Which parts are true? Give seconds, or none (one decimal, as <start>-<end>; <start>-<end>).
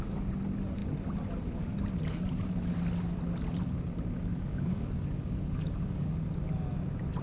0.0-4.3; 6.1-7.2